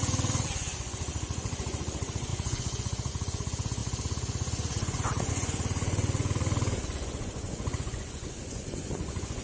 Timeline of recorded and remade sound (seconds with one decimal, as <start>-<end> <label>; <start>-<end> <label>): 0.0-9.4 remade